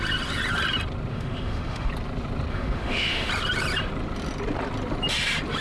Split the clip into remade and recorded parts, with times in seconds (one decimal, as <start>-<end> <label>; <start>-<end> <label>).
0.0-1.1 recorded; 1.1-1.9 remade; 1.9-2.5 recorded; 2.5-3.3 remade; 3.3-5.6 recorded